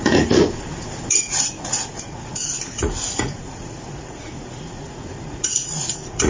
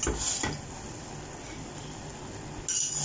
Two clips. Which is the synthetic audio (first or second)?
first